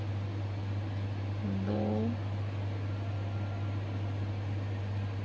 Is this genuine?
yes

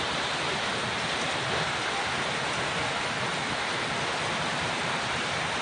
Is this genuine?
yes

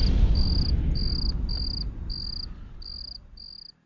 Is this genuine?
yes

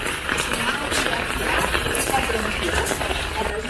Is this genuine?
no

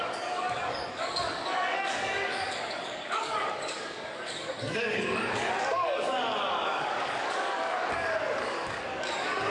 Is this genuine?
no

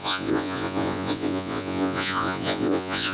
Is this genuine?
no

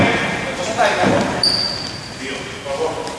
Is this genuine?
no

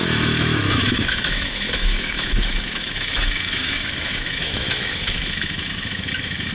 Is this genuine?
no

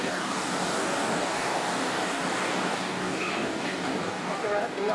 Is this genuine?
no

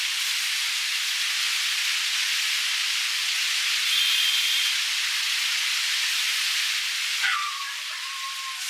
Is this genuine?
yes